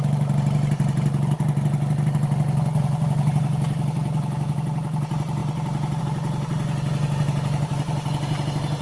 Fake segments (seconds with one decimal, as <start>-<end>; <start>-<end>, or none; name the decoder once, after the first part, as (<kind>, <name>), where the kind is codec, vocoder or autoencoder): none